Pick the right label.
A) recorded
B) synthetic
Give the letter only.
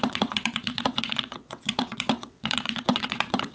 B